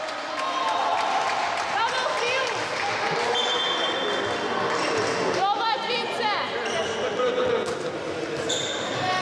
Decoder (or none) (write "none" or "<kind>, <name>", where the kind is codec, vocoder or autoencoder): none